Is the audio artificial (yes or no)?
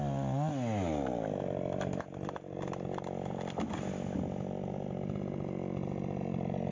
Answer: no